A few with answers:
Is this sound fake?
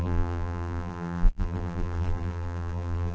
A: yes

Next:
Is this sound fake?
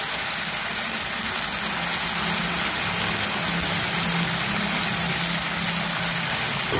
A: no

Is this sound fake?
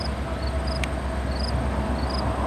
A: no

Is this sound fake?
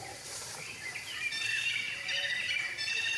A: yes